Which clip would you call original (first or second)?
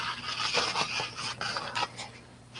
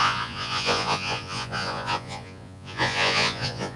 first